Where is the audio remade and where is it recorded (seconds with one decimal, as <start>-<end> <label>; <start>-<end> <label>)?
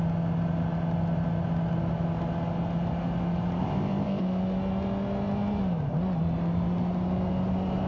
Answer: 0.0-3.6 recorded; 3.6-4.2 remade; 4.2-7.9 recorded